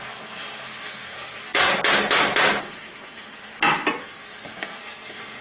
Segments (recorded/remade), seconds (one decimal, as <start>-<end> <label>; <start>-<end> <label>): 0.0-1.7 remade; 1.7-2.6 recorded; 2.6-3.5 remade; 3.5-4.0 recorded; 4.0-5.4 remade